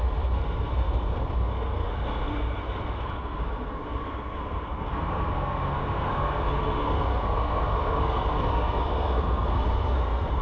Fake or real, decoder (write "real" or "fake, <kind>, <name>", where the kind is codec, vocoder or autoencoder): fake, codec, SNAC